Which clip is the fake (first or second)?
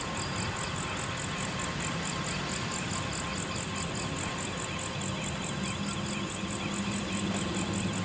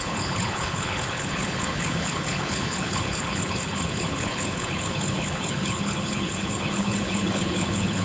second